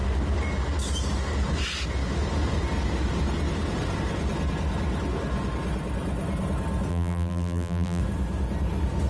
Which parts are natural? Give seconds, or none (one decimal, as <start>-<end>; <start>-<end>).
0.0-6.9; 8.0-9.1

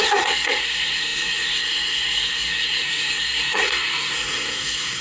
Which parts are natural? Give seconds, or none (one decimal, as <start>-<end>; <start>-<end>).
none